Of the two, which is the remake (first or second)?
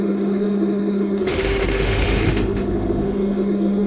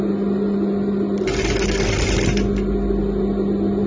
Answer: first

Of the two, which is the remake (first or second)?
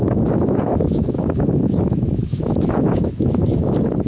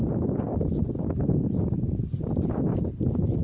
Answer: first